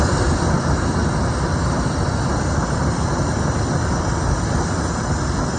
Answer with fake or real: real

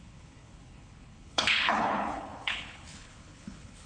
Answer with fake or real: fake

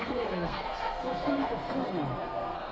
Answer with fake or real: fake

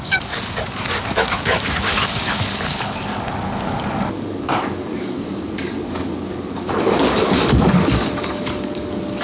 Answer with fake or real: fake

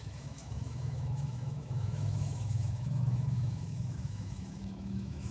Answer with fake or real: fake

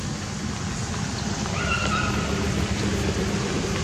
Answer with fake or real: real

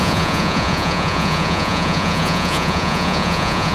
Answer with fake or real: fake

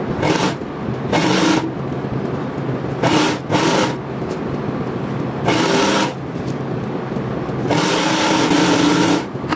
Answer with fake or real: real